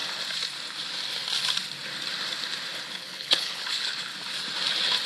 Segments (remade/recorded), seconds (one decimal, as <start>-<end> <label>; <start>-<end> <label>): 0.0-2.9 recorded; 2.9-4.1 remade; 4.1-5.1 recorded